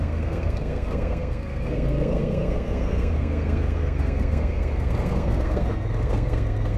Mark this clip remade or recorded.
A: remade